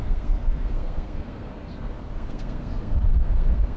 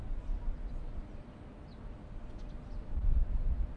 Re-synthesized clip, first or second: first